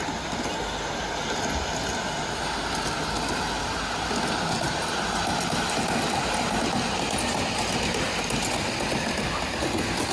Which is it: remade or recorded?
recorded